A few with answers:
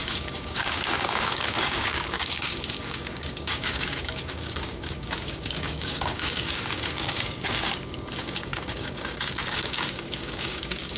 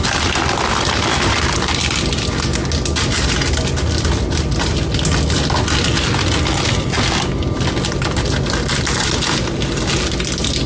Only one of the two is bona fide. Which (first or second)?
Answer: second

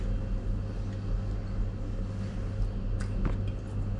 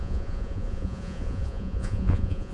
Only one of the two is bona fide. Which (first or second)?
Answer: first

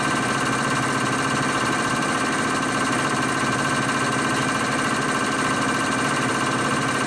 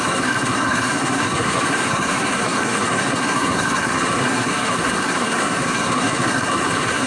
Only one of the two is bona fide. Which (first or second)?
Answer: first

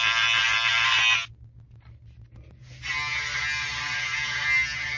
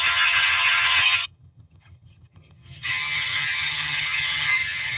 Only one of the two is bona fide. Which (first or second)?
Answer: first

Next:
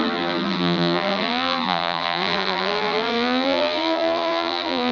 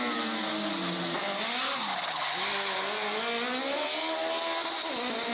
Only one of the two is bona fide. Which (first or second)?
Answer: second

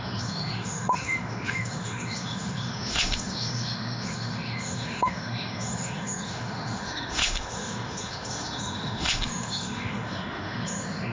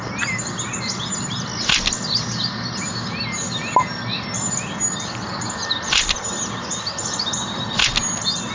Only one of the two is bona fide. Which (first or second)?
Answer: second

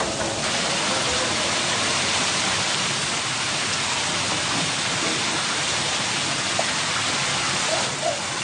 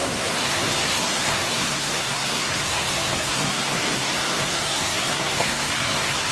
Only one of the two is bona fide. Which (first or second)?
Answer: first